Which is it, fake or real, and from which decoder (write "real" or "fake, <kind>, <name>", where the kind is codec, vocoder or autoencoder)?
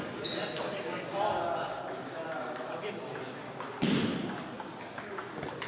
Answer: real